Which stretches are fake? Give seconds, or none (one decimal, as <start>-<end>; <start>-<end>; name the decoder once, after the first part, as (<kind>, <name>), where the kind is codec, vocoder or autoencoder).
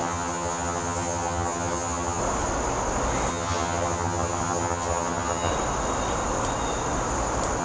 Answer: 0.0-2.2 (vocoder, HiFi-GAN); 3.3-5.5